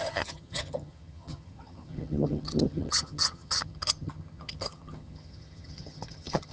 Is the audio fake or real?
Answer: fake